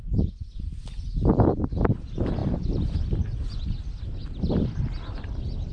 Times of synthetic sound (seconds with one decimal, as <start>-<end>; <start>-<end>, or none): none